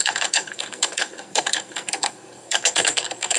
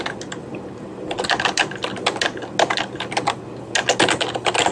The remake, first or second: first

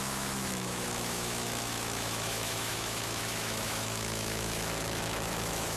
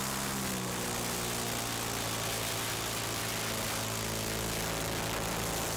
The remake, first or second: first